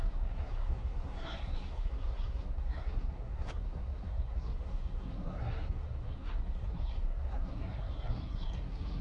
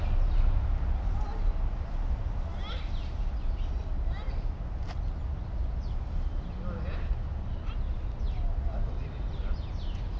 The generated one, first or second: first